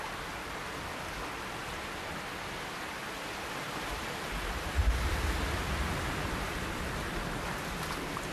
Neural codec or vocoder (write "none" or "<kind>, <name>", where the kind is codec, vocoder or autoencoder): none